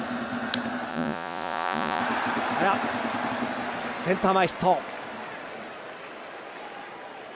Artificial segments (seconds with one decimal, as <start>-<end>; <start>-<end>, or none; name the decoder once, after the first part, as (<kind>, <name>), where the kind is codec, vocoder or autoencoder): 0.9-2.0 (vocoder, Vocos)